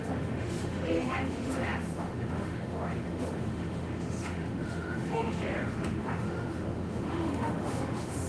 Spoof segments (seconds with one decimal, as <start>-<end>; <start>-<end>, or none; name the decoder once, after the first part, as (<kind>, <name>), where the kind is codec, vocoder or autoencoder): 0.0-8.3 (autoencoder, DAC-VAE)